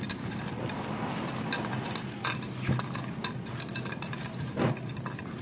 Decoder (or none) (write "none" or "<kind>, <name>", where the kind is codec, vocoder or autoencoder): none